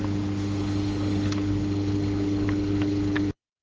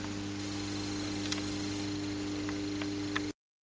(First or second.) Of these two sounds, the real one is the second